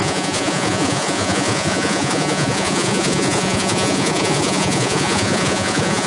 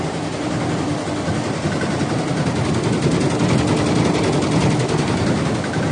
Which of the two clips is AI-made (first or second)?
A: first